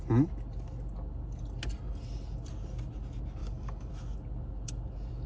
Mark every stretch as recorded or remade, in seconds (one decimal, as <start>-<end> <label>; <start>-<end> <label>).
0.0-3.4 recorded; 3.4-3.9 remade; 3.9-5.3 recorded